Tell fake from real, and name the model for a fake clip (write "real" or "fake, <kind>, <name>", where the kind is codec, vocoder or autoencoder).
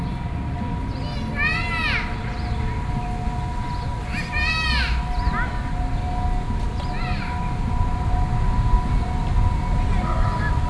real